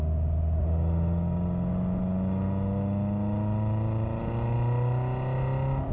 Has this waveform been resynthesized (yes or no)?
no